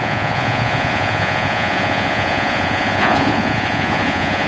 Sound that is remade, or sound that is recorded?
remade